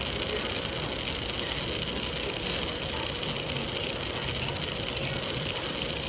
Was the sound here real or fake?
real